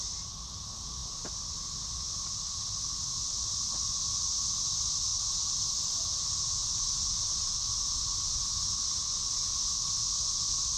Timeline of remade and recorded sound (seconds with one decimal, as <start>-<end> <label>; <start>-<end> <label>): 0.0-6.6 recorded; 6.6-7.9 remade; 7.9-10.8 recorded